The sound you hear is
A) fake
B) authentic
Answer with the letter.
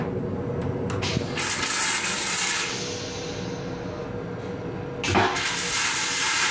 B